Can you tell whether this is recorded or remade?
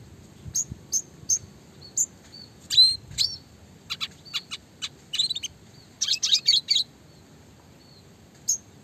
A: recorded